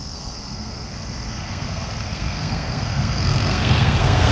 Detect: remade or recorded remade